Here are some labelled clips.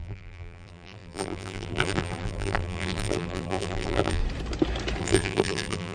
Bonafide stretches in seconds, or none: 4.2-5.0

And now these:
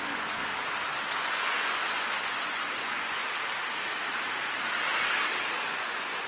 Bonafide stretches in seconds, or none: 0.4-1.2; 3.2-5.6

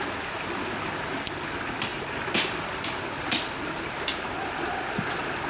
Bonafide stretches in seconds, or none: 0.0-5.5

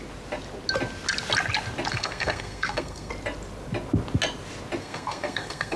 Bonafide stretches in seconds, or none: 0.0-1.9; 3.1-4.8

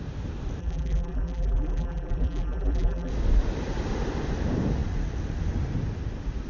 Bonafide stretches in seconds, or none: 0.0-0.6; 3.1-6.5

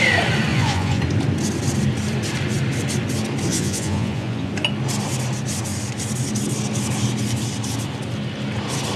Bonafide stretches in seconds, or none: 0.0-0.5; 1.0-3.5; 4.5-9.0

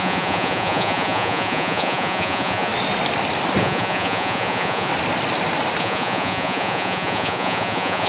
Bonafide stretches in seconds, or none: 2.7-3.6; 4.9-5.8